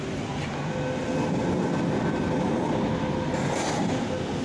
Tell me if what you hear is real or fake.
real